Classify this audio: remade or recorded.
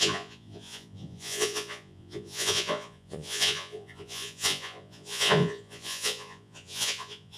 remade